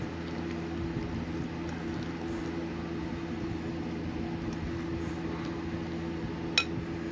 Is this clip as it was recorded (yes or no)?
yes